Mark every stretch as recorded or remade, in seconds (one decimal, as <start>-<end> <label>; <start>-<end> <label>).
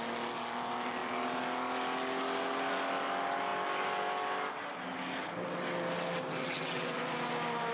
0.0-6.4 recorded; 6.4-7.0 remade; 7.0-7.7 recorded